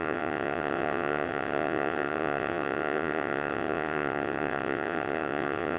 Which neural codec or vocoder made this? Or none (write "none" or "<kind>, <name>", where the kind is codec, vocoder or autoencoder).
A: vocoder, WaveNeXt